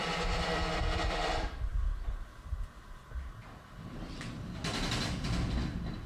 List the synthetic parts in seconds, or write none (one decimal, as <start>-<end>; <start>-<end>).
0.0-1.7; 3.4-4.6